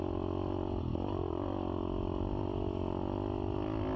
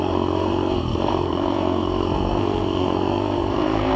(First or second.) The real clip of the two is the first